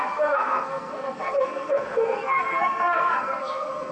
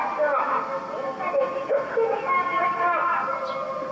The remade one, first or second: first